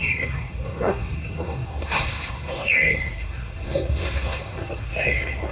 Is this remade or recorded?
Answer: remade